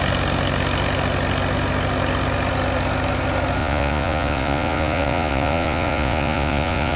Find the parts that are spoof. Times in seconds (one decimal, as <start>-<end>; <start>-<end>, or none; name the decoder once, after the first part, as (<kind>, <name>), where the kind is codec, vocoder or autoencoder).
3.6-7.0 (vocoder, Vocos)